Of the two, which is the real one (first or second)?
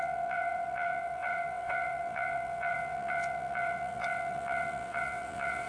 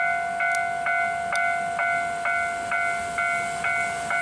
second